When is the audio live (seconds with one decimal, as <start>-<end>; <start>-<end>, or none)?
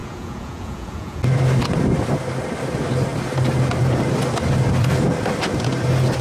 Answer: 1.2-6.2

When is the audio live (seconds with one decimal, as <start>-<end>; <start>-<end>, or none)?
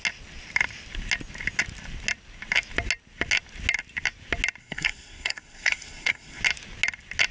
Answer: 0.0-4.6; 6.4-7.3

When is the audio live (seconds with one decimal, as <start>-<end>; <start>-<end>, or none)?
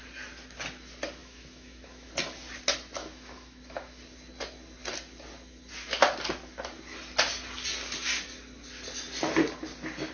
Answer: 0.0-1.2; 2.1-3.0; 4.0-10.1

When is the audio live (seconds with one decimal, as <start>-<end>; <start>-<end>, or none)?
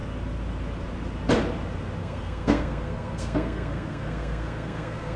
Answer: 0.0-2.0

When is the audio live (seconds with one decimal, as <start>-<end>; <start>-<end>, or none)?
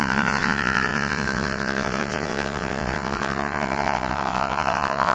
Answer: none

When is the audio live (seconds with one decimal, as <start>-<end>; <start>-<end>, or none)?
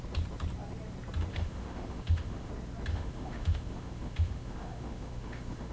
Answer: 0.0-1.3; 2.5-2.9